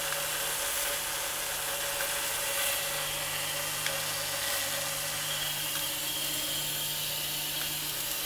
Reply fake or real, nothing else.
real